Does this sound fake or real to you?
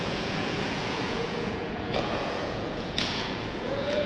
fake